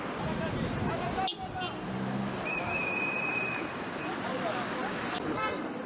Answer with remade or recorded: recorded